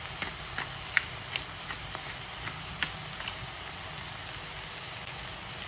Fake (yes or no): no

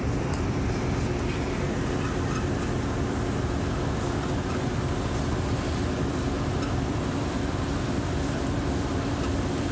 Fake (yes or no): no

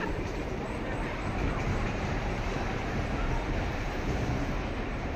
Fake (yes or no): yes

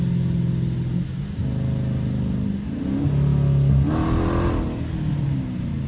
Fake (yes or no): no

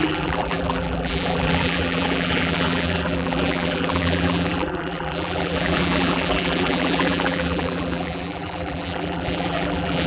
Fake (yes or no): yes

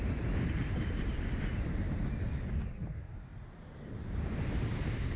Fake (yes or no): no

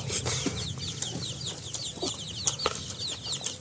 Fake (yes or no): no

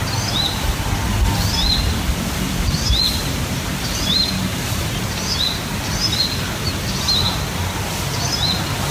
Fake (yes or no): no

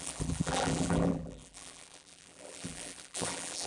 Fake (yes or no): yes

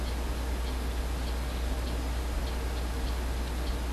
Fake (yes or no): no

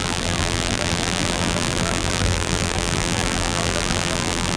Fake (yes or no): yes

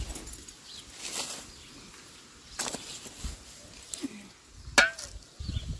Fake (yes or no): no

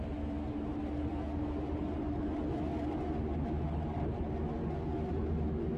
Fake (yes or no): no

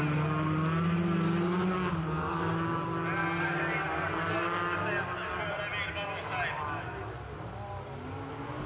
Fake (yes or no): no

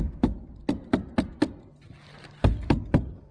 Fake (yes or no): no